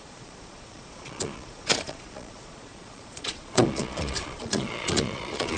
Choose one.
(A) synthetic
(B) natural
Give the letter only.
A